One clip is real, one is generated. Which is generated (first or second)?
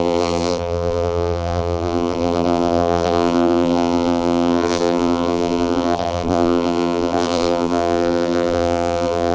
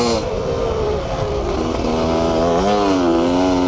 first